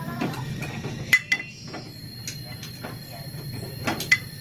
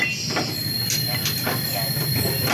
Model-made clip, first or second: second